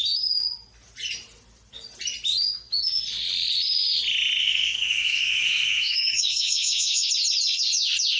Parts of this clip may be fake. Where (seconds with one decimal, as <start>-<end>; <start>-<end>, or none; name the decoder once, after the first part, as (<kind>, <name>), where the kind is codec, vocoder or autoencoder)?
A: 4.4-7.1 (autoencoder, DAC-VAE)